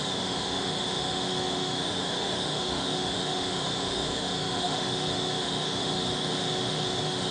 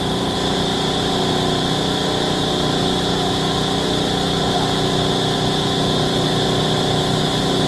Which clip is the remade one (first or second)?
first